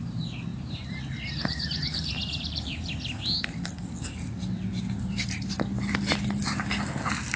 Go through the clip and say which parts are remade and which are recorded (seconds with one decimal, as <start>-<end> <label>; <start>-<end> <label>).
0.0-0.5 recorded; 0.5-2.9 remade; 2.9-4.7 recorded; 4.7-5.5 remade; 5.5-7.4 recorded